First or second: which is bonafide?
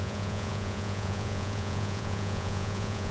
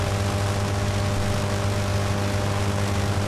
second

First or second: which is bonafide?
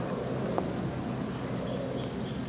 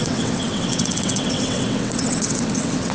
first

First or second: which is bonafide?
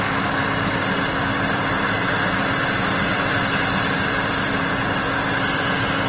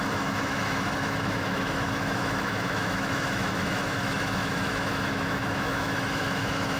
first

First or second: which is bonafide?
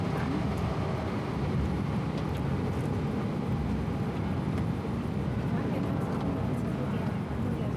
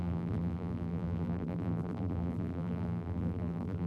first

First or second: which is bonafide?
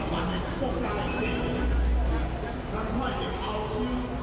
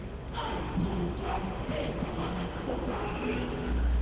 first